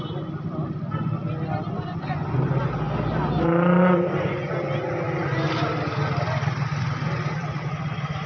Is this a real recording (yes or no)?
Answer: yes